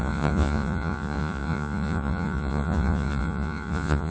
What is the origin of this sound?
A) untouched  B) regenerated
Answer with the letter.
B